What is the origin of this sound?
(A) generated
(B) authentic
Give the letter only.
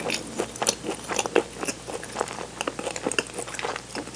B